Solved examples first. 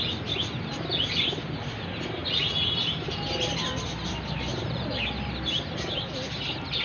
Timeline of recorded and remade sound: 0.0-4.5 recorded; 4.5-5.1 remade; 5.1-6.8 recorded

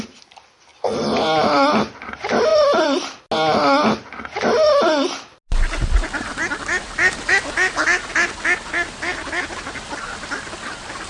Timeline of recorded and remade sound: 0.0-0.7 recorded; 0.7-2.1 remade; 2.1-2.5 recorded; 2.5-3.2 remade; 3.2-11.1 recorded

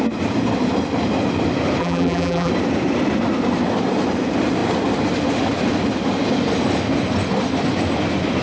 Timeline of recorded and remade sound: 0.0-1.8 recorded; 1.8-2.5 remade; 2.5-8.4 recorded